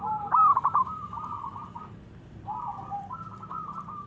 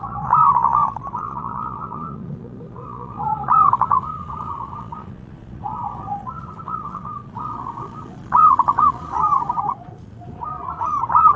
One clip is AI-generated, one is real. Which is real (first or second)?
first